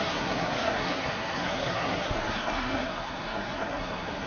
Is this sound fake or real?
fake